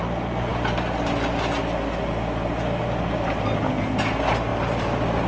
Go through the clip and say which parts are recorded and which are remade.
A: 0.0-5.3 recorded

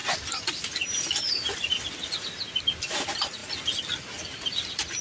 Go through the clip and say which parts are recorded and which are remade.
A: 0.0-5.0 recorded

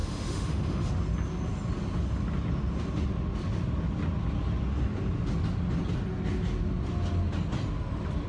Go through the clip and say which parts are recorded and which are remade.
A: 0.0-0.9 remade; 0.9-8.3 recorded

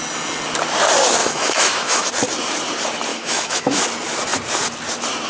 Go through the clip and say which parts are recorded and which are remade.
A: 0.0-1.2 recorded; 1.2-2.1 remade; 2.1-3.1 recorded; 3.1-3.8 remade; 3.8-5.3 recorded

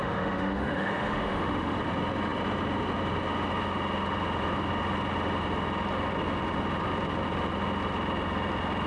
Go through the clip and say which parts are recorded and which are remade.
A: 0.0-1.8 remade; 1.8-8.9 recorded